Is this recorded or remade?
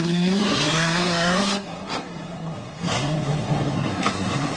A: remade